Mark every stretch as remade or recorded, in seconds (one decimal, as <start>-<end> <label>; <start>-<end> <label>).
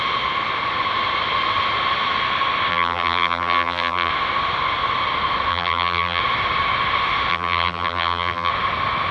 0.0-2.7 recorded; 2.7-4.1 remade; 4.1-5.5 recorded; 5.5-6.2 remade; 6.2-7.3 recorded; 7.3-8.5 remade; 8.5-9.1 recorded